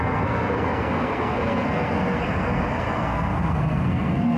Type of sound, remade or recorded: remade